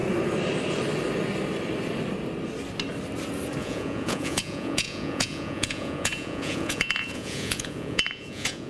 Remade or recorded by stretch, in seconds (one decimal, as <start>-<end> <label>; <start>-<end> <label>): 0.0-3.6 recorded; 3.6-8.7 remade